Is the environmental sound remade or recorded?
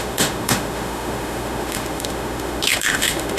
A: remade